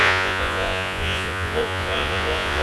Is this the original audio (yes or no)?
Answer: no